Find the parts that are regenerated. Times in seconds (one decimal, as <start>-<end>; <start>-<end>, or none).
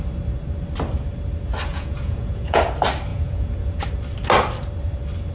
1.7-2.6; 3.1-3.8